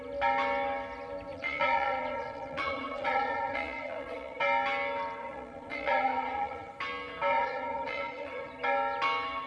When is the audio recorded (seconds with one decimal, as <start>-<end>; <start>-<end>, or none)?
0.0-1.3; 4.4-5.2; 6.7-7.3; 8.5-9.5

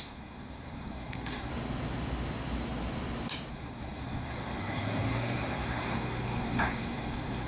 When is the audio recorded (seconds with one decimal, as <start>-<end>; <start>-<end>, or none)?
1.5-3.5

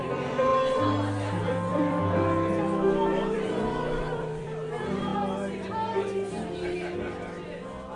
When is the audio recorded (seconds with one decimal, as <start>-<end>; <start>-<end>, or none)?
0.5-1.4; 2.0-2.6; 5.1-8.0

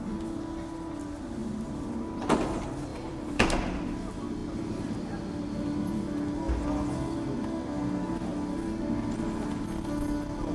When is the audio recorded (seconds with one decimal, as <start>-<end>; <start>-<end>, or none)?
0.0-2.9; 3.6-10.5

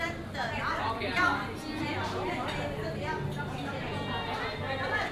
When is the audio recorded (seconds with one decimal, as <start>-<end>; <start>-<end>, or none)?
0.0-5.1